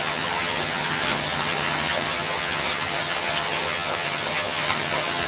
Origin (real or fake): fake